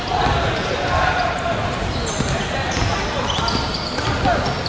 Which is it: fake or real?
real